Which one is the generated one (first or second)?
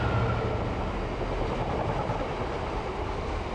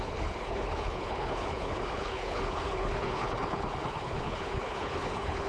second